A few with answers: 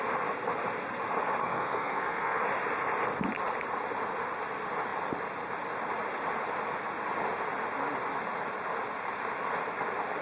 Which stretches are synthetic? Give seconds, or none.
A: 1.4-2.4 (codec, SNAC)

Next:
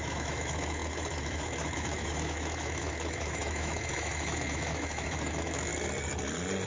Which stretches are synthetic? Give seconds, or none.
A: 0.0-5.7 (autoencoder, DAC-VAE)

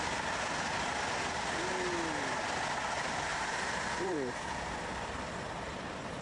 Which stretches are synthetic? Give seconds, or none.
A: 3.3-5.3 (vocoder, BigVGAN v2)

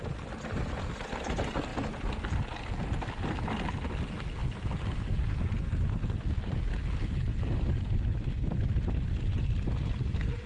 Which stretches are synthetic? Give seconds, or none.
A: none

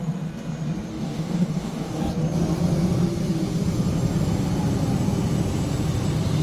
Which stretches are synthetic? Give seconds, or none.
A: 0.9-2.0 (codec, DAC)

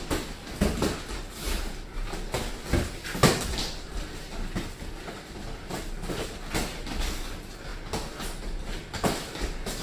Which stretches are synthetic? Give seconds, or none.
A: none

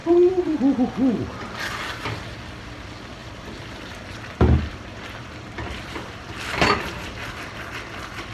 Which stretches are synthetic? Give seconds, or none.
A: 0.0-0.6 (vocoder, BigVGAN v2); 3.2-7.6

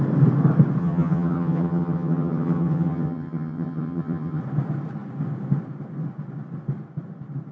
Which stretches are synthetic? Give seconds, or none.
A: 0.8-4.4 (vocoder, HiFi-GAN)